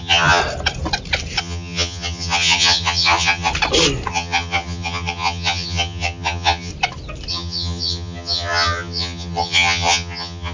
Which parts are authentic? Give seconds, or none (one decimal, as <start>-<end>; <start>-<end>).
0.4-1.4; 3.5-4.1; 6.7-7.3

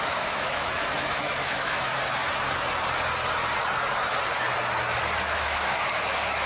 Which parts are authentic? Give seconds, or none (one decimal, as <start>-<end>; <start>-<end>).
1.9-5.2